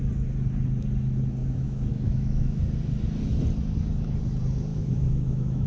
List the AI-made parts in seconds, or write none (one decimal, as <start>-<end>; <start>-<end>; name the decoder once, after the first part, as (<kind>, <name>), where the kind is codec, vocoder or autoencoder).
1.4-2.6 (autoencoder, DAC-VAE); 4.7-5.7